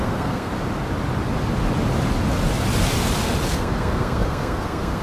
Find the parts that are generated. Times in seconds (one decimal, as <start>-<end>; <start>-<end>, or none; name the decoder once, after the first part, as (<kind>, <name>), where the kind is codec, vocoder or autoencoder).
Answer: 0.0-0.5 (codec, SNAC); 3.5-5.0